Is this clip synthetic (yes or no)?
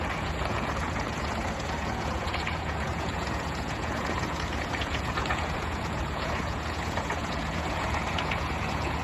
yes